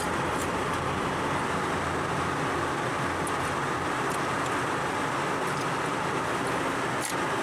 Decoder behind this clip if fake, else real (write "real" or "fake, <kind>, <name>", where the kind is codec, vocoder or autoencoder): real